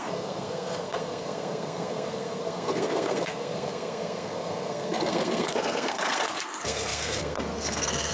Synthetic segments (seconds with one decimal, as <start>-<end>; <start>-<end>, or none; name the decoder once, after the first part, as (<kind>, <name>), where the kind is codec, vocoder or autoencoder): 0.0-8.1 (codec, SNAC)